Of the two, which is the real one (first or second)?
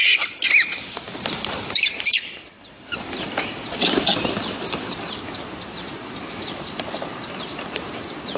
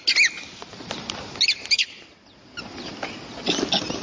second